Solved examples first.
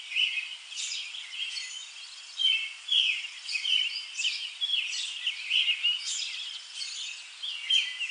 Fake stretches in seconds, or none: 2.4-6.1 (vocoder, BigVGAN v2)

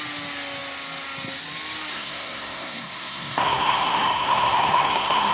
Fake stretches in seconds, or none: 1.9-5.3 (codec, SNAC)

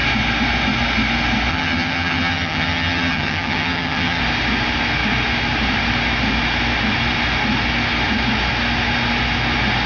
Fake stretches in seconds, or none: 1.5-4.2 (vocoder, HiFi-GAN)